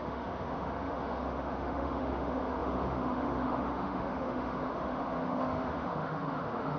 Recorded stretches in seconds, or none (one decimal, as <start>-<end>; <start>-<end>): none